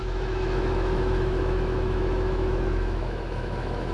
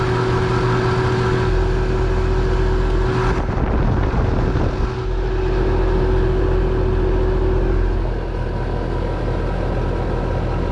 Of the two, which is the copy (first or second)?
first